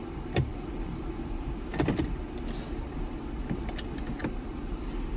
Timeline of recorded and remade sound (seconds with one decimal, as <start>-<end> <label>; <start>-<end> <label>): 0.0-5.2 recorded